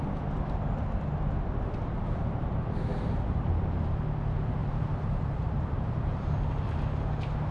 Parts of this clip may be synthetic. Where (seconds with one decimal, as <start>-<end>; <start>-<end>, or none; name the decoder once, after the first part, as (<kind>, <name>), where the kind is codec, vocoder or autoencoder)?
2.9-3.5 (vocoder, BigVGAN v2); 4.6-6.4